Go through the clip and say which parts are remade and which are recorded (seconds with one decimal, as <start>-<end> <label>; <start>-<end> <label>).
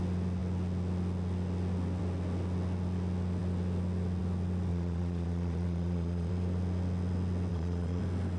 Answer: 0.0-4.7 recorded; 4.7-6.3 remade; 6.3-7.5 recorded; 7.5-8.0 remade; 8.0-8.4 recorded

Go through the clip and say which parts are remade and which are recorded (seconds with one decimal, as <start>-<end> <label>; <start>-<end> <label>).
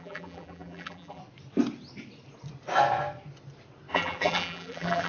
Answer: 0.0-1.2 remade; 1.2-3.9 recorded; 3.9-5.1 remade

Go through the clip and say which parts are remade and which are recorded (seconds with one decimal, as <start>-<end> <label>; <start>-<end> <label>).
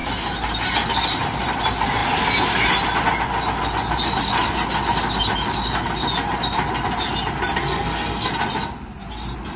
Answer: 0.0-7.6 recorded; 7.6-8.3 remade; 8.3-9.6 recorded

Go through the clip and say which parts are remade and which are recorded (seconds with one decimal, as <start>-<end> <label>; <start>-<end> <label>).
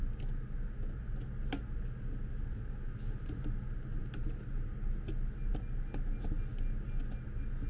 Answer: 0.0-7.7 recorded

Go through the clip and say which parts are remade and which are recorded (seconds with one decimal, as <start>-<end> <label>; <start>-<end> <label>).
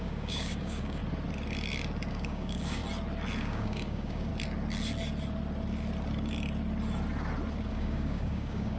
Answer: 0.0-1.0 remade; 1.0-2.1 recorded; 2.1-2.8 remade; 2.8-3.4 recorded; 3.4-4.3 remade; 4.3-7.7 recorded; 7.7-8.8 remade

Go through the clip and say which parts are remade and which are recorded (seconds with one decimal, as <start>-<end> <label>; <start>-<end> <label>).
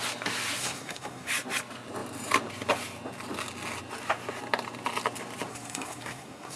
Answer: 0.0-0.6 recorded; 0.6-1.3 remade; 1.3-5.5 recorded; 5.5-6.6 remade